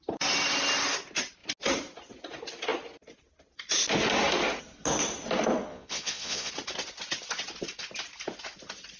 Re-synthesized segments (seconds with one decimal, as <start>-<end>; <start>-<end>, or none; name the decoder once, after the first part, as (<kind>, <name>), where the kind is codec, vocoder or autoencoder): 5.7-6.5 (vocoder, Vocos)